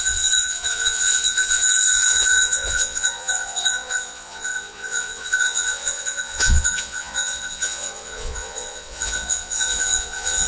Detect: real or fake fake